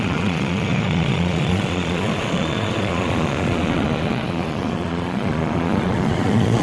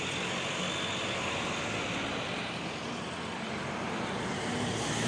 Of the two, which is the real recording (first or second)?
second